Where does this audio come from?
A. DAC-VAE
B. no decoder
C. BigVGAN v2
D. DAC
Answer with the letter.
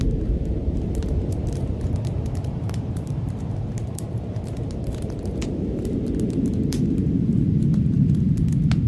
C